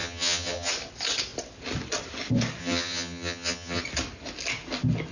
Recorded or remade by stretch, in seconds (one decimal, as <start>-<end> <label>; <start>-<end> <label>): 0.0-0.7 remade; 0.7-2.6 recorded; 2.6-3.8 remade; 3.8-5.1 recorded